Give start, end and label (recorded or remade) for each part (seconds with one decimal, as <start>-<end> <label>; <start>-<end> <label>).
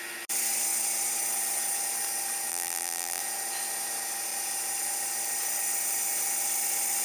0.0-2.5 recorded; 2.5-3.2 remade; 3.2-7.0 recorded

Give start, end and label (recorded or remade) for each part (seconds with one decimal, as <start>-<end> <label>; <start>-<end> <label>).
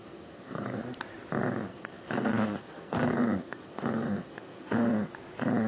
0.0-0.8 remade; 0.8-1.7 recorded; 1.7-5.1 remade; 5.1-5.7 recorded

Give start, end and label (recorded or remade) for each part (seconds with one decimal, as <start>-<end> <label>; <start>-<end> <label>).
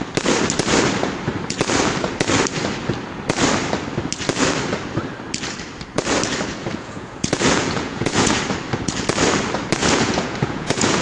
0.0-6.7 recorded; 6.7-8.4 remade; 8.4-9.8 recorded; 9.8-11.0 remade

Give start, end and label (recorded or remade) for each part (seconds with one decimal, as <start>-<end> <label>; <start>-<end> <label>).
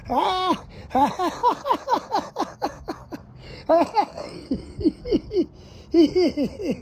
0.0-0.8 remade; 0.8-1.4 recorded; 1.4-5.3 remade; 5.3-6.8 recorded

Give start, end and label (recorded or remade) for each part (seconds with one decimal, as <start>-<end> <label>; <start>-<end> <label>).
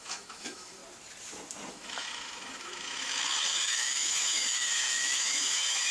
0.0-0.8 remade; 0.8-1.7 recorded; 1.7-5.9 remade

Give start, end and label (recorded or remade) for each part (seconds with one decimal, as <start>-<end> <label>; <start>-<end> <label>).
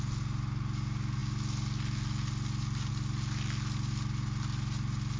0.0-5.2 recorded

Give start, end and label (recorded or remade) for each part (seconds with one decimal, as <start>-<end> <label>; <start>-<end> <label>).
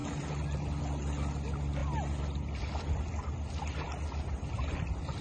0.0-5.2 recorded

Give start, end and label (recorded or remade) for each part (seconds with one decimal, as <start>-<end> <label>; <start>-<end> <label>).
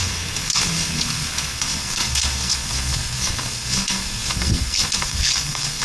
0.0-5.8 remade